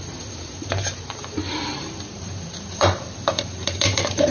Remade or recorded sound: remade